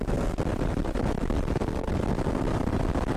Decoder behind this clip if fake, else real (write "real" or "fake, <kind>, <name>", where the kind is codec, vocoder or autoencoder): real